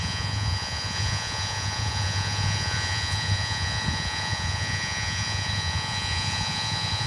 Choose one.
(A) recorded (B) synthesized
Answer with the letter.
B